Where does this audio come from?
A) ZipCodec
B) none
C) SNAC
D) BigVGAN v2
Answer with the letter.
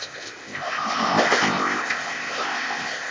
A